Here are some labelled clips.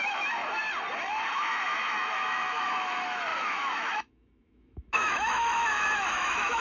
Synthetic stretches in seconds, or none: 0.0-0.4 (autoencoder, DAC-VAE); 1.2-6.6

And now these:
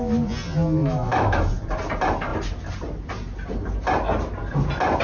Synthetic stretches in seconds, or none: 0.8-1.5 (autoencoder, DAC-VAE)

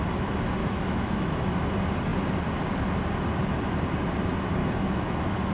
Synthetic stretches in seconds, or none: 0.6-1.5 (autoencoder, DAC-VAE); 4.6-5.5